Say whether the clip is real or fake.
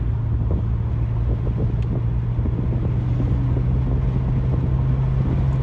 real